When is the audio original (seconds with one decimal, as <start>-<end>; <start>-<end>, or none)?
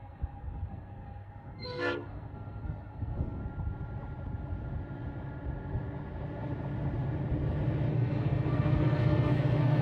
3.4-7.9